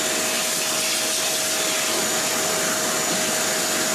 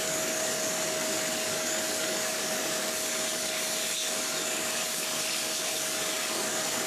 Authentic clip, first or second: first